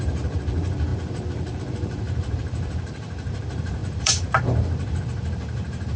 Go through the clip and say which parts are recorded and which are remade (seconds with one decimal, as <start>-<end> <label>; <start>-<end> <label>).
0.0-6.0 remade